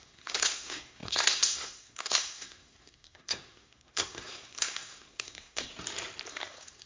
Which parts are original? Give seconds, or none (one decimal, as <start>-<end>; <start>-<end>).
5.7-6.3